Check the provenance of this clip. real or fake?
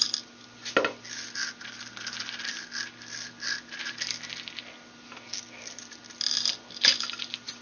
real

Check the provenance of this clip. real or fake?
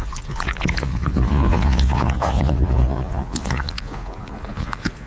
fake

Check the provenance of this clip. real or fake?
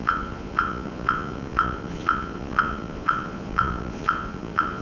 fake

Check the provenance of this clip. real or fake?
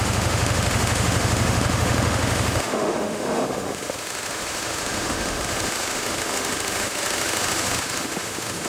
fake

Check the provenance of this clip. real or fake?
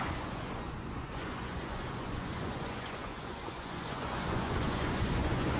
fake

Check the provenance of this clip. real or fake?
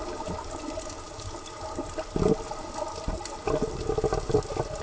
real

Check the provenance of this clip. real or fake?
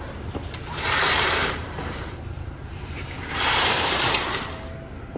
fake